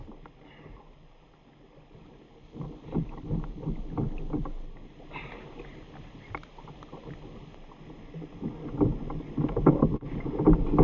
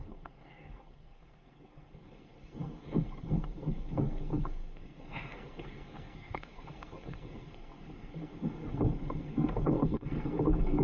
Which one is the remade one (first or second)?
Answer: second